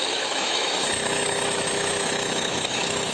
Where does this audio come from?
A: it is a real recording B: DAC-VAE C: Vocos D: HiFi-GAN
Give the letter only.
B